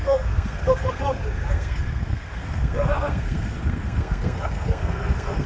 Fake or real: fake